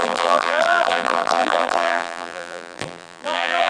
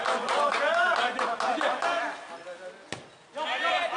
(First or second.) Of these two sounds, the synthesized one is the first